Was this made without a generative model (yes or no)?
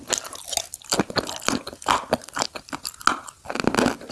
yes